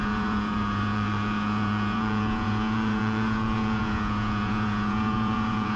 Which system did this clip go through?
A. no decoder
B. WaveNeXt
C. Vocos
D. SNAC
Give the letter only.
C